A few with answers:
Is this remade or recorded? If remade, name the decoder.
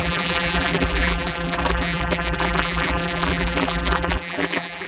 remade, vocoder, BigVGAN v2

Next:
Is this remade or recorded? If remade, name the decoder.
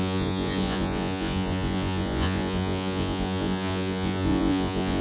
remade, vocoder, Vocos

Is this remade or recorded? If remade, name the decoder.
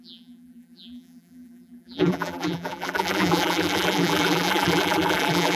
remade, vocoder, BigVGAN v2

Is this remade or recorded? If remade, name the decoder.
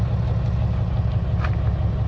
recorded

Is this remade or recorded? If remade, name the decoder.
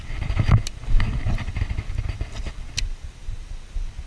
recorded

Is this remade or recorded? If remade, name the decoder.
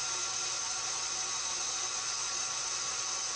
recorded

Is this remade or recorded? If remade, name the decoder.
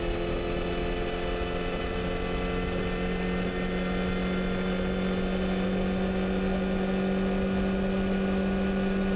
recorded